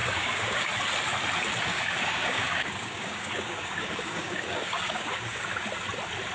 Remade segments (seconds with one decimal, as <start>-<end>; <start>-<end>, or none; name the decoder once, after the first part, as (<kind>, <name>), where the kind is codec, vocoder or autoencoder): 0.0-0.7 (codec, DAC); 1.7-5.5